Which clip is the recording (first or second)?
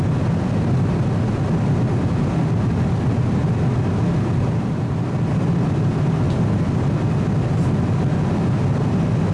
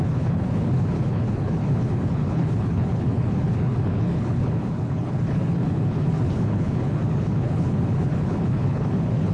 first